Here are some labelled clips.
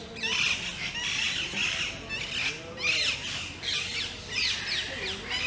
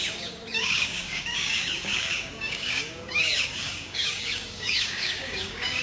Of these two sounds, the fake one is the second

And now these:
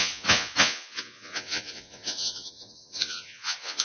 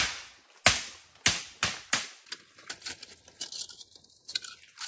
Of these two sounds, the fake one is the first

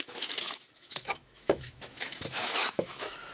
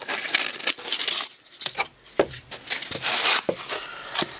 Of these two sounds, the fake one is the first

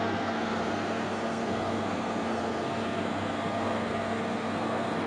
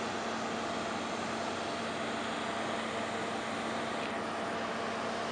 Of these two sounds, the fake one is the first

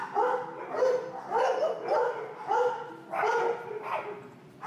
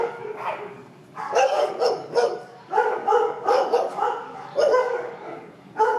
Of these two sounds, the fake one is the second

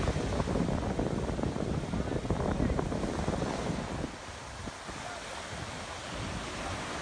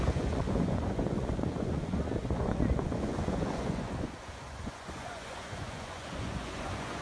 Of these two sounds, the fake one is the second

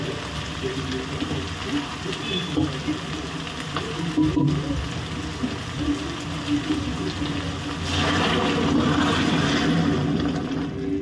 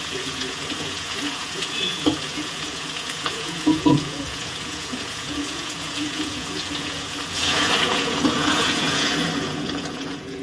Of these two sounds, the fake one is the second